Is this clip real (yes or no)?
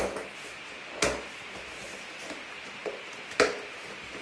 yes